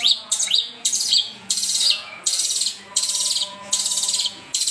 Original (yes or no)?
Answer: no